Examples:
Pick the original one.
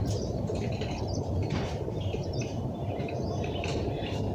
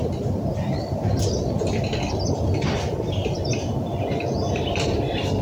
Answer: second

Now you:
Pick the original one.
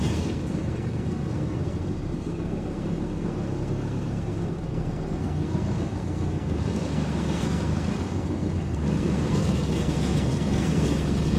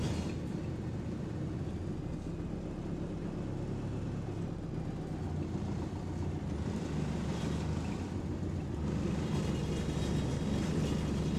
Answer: second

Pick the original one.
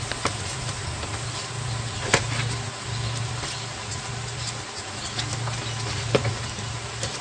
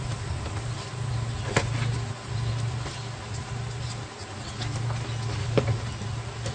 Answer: second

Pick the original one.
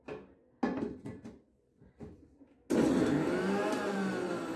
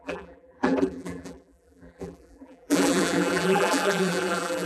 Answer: first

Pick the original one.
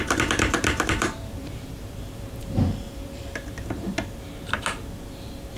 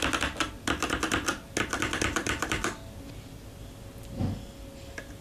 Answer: second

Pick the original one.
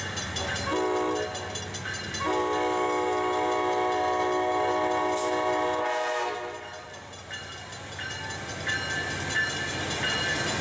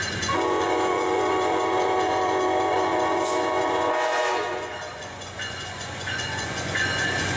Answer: first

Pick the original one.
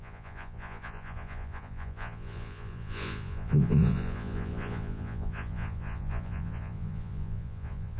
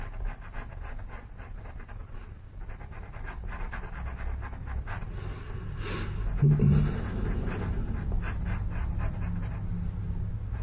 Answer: second